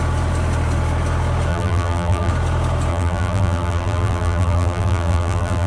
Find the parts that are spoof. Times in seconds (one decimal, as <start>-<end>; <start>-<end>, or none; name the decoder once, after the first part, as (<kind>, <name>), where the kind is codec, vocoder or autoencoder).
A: 1.5-2.3 (vocoder, BigVGAN v2); 2.9-5.7